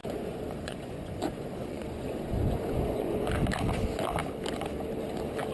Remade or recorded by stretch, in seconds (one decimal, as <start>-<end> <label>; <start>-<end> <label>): 0.0-3.3 remade; 3.3-5.5 recorded